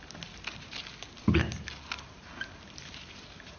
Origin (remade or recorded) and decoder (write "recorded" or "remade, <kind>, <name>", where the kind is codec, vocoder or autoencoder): recorded